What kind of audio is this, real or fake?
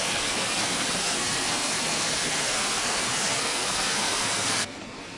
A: fake